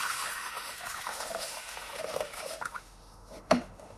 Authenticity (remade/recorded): remade